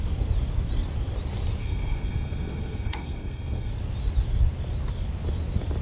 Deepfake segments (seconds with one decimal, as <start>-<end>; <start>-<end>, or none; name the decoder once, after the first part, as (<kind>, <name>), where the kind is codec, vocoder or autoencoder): 1.6-3.7 (codec, SNAC)